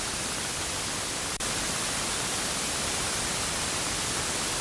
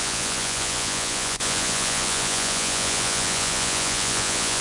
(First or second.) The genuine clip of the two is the first